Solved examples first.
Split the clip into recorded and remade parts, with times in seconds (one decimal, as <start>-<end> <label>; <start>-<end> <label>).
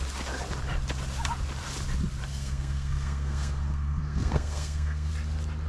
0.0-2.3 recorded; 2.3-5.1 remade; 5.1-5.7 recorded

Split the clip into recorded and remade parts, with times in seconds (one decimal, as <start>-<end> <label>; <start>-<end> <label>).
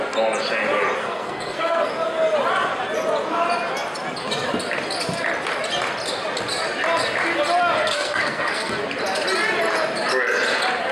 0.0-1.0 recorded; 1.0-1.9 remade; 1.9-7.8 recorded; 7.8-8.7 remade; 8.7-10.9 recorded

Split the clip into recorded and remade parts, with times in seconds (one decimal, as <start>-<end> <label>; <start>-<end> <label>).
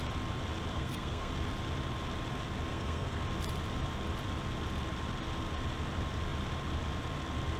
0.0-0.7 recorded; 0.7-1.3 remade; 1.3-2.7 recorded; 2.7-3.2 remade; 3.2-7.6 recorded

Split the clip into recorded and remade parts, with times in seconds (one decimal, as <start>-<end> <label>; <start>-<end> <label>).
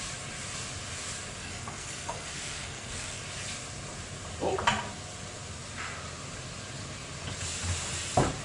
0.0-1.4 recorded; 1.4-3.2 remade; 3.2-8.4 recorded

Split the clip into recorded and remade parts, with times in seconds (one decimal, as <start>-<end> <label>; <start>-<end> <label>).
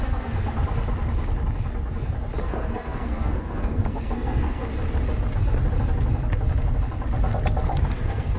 0.0-0.4 remade; 0.4-2.4 recorded; 2.4-4.6 remade; 4.6-8.0 recorded; 8.0-8.4 remade